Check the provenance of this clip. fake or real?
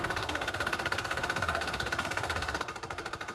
fake